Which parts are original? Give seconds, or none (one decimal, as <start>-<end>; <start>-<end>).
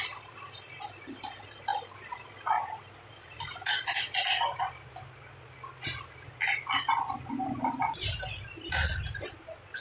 0.0-9.8